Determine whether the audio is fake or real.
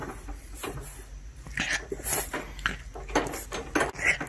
real